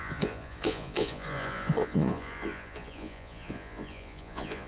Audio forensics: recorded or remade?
remade